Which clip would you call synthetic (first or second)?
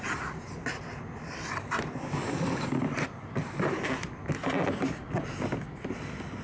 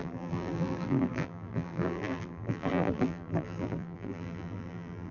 second